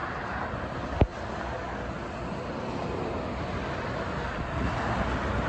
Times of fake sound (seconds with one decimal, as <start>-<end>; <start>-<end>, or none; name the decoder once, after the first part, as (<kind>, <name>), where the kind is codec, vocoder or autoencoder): none